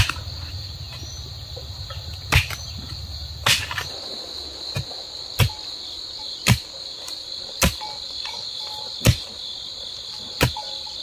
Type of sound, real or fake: real